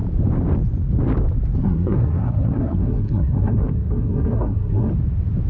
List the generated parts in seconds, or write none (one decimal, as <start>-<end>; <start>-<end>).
1.6-4.9